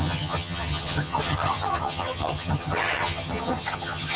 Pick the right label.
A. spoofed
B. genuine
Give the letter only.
A